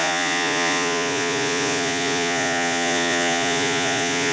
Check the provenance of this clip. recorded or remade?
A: remade